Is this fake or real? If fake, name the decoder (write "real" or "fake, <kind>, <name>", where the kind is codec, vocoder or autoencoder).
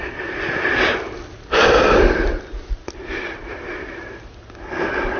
real